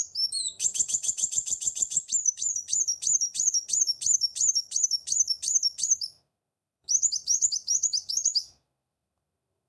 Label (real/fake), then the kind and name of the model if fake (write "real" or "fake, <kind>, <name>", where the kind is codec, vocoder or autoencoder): fake, autoencoder, DAC-VAE